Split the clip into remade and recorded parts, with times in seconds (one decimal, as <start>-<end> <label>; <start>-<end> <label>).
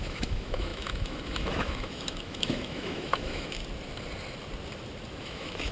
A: 0.0-3.6 remade; 3.6-5.2 recorded; 5.2-5.7 remade